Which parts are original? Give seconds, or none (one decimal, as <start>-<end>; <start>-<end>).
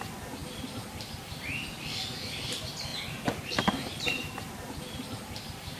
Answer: 0.0-5.8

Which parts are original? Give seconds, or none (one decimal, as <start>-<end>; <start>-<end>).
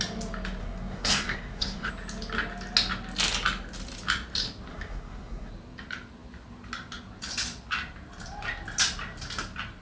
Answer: 0.0-0.6; 1.9-4.7; 5.5-9.8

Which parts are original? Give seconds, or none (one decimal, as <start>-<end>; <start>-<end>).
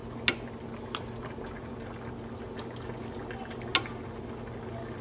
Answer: 0.0-5.0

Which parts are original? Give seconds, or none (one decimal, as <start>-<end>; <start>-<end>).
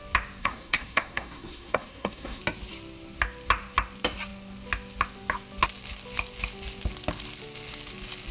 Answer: 0.0-0.4; 2.4-8.3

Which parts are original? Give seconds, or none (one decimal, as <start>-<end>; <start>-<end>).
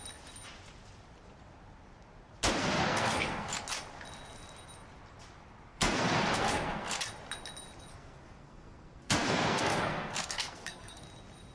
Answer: 0.0-2.6; 3.5-5.7; 7.0-7.9; 11.0-11.5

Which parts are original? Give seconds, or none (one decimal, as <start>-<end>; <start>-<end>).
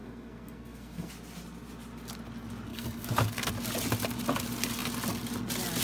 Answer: 1.1-2.7; 3.5-5.8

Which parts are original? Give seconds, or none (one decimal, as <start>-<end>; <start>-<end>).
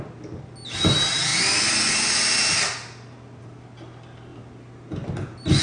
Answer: 0.0-5.6